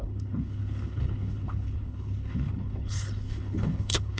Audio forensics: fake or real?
fake